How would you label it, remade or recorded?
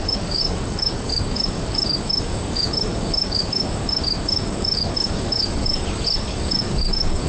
remade